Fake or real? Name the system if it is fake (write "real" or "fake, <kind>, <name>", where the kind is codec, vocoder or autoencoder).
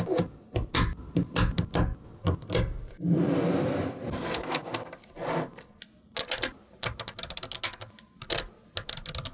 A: real